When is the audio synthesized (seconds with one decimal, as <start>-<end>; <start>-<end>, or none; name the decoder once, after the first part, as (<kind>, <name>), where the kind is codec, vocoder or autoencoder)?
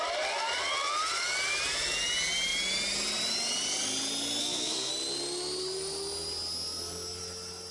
4.4-4.9 (codec, SNAC)